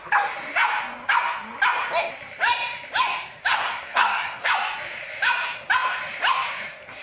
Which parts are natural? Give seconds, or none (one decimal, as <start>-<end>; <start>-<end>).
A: 0.0-3.5; 4.5-7.0